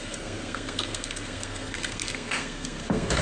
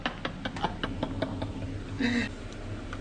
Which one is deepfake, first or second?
first